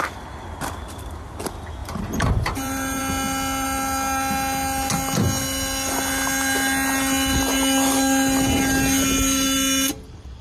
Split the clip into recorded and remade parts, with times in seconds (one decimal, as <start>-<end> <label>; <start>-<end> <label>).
0.0-1.8 recorded; 1.8-3.0 remade; 3.0-10.4 recorded